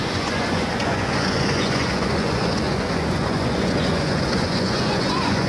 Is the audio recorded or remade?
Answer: remade